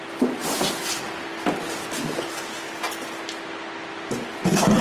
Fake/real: real